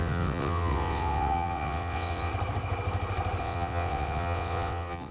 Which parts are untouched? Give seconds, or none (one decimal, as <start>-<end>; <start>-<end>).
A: 2.3-3.4